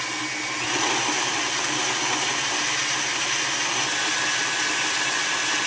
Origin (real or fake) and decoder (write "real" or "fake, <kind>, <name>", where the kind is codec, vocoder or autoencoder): real